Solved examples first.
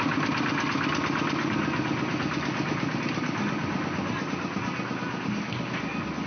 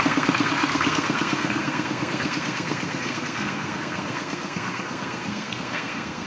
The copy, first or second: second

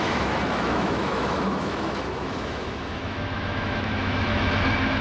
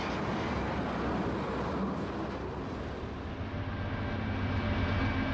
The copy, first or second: first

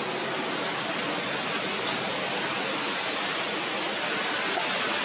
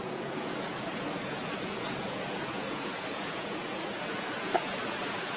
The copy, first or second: second